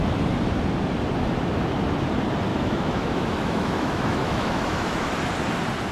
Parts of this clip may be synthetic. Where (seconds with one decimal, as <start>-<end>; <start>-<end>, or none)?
2.5-5.1